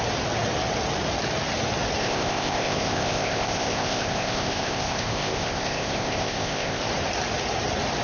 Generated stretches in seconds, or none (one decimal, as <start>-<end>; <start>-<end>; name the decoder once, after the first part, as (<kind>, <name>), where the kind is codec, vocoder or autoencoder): 2.0-6.8 (codec, ZipCodec)